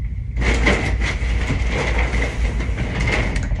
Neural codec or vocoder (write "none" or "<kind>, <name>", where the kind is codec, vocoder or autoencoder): none